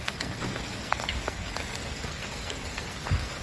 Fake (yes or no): yes